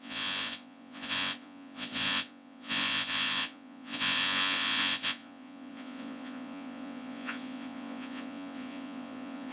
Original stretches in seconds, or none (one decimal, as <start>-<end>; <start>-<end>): none